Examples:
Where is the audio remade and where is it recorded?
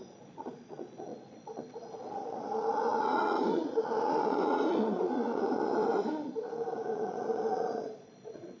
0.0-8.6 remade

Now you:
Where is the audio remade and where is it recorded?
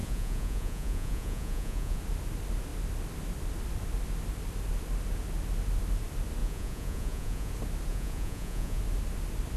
0.0-2.0 remade; 2.0-6.4 recorded; 6.4-7.5 remade; 7.5-7.9 recorded; 7.9-8.8 remade; 8.8-9.6 recorded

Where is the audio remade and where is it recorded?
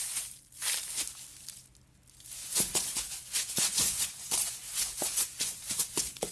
0.0-2.4 recorded; 2.4-6.3 remade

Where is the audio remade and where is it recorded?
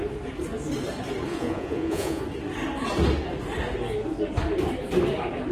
0.0-1.3 recorded; 1.3-2.2 remade; 2.2-5.5 recorded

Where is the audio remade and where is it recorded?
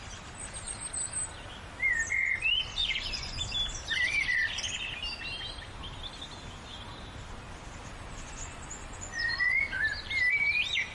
0.0-2.8 recorded; 2.8-3.4 remade; 3.4-7.8 recorded; 7.8-9.6 remade; 9.6-10.9 recorded